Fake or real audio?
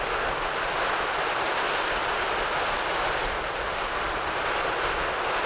real